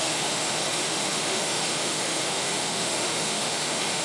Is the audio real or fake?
fake